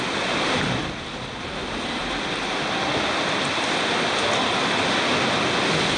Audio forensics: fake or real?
real